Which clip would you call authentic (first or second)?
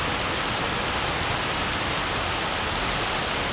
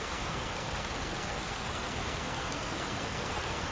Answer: first